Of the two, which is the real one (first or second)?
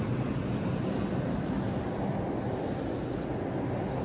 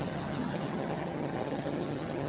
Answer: first